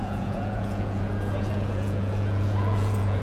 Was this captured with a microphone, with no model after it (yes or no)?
no